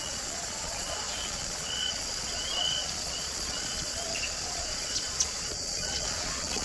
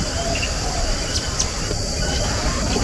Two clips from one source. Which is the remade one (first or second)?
first